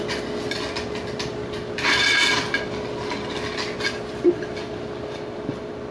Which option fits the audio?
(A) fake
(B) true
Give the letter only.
B